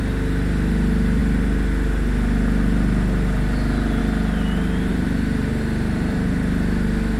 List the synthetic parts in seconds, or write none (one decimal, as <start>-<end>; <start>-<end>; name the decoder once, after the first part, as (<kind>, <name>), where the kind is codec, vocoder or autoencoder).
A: 4.9-6.4 (vocoder, BigVGAN v2)